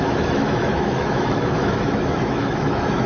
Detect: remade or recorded remade